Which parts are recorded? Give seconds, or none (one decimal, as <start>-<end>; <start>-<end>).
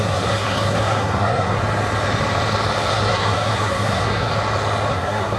1.6-2.9; 4.3-4.9